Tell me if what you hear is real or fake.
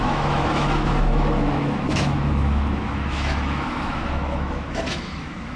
fake